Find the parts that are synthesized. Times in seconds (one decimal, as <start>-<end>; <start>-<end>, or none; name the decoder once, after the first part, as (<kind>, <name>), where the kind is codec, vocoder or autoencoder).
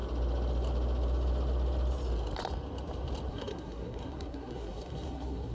3.3-5.5 (codec, SNAC)